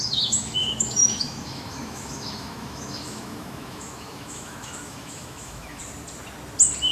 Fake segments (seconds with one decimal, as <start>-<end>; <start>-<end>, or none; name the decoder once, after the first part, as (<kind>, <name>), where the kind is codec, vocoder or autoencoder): 0.0-5.8 (autoencoder, DAC-VAE)